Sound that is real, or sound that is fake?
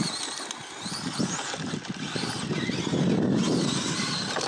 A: real